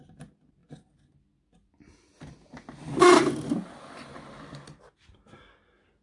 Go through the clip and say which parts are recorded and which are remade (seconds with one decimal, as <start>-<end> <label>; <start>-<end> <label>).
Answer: 0.0-6.0 recorded